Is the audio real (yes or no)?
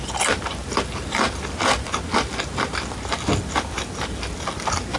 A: yes